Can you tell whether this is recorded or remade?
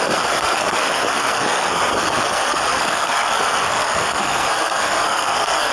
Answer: remade